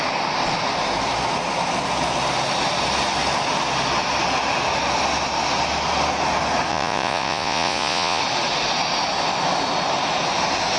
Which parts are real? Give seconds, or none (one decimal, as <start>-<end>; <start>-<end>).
0.0-6.7; 8.2-10.8